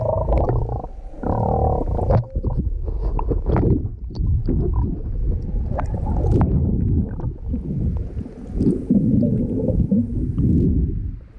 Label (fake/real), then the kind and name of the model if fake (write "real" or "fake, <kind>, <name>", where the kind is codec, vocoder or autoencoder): real